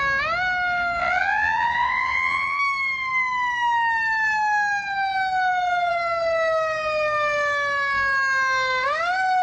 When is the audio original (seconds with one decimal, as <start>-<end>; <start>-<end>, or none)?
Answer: 0.0-1.0; 2.6-9.4